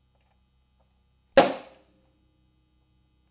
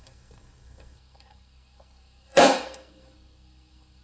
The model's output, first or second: second